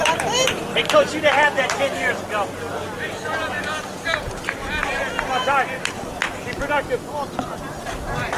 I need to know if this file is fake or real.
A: fake